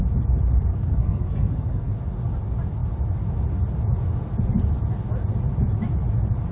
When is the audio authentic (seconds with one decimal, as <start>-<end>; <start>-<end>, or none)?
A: 0.0-0.7; 1.9-6.5